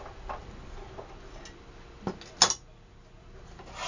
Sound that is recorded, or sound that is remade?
recorded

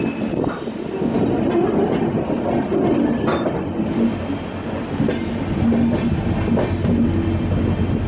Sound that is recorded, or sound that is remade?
recorded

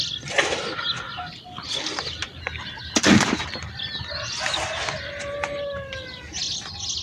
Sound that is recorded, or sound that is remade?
recorded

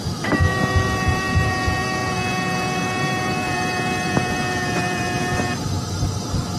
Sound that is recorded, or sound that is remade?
recorded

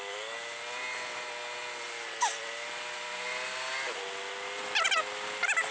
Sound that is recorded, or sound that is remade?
recorded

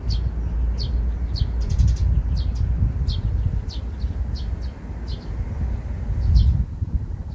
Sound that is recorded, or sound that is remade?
recorded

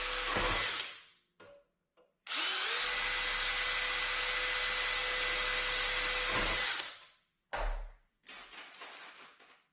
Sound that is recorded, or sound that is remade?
recorded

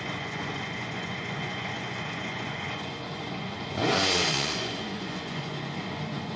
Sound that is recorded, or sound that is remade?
remade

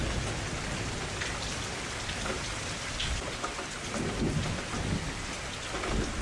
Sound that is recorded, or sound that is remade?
recorded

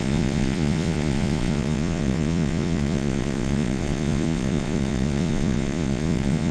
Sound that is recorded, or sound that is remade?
remade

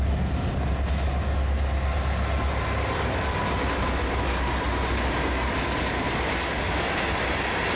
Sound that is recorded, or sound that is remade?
recorded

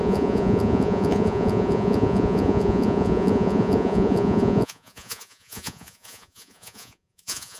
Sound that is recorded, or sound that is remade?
remade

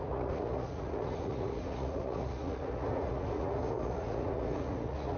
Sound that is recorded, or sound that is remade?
remade